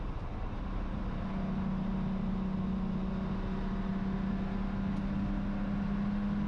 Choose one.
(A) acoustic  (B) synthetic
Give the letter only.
A